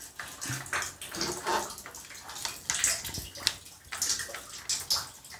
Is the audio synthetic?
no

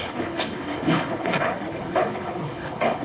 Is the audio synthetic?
yes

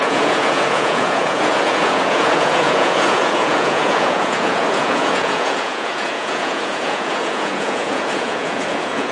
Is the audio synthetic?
yes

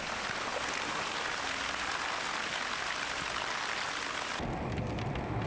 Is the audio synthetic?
no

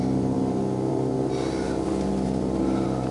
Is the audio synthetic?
no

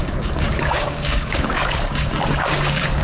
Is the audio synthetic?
yes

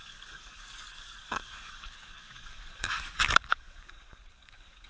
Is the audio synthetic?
yes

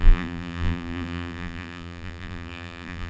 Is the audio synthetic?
yes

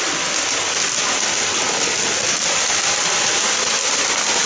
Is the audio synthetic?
no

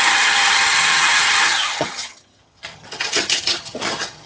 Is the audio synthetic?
yes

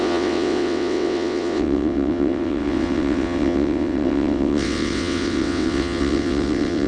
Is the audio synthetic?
yes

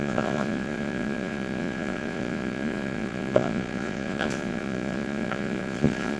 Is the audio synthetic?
yes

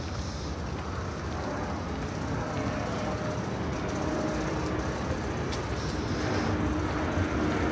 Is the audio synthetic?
no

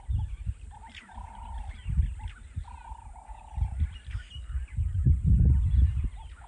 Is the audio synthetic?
no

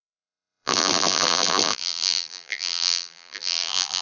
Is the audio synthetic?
yes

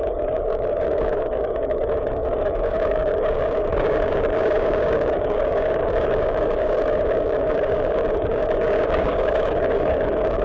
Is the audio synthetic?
yes